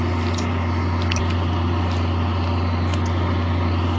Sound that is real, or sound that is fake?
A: real